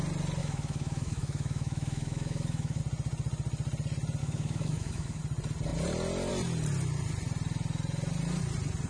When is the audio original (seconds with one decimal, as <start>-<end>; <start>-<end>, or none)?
0.0-0.4; 2.8-4.2; 5.2-8.9